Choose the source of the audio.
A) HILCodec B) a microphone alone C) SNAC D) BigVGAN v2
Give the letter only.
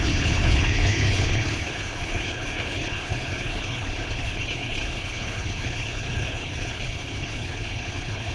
A